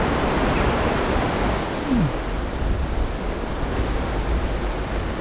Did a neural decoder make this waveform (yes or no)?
no